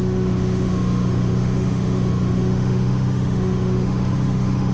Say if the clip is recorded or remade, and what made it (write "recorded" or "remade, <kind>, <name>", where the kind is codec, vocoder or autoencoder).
remade, autoencoder, DAC-VAE